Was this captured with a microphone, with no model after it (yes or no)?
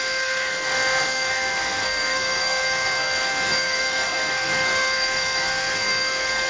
no